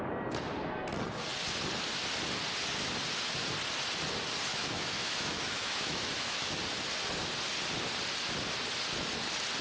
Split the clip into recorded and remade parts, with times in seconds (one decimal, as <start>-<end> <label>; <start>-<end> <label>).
0.0-4.5 recorded; 4.5-6.6 remade; 6.6-9.6 recorded